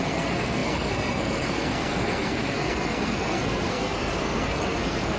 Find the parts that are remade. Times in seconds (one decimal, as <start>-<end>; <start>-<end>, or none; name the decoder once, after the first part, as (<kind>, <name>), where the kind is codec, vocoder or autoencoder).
0.0-5.2 (codec, SNAC)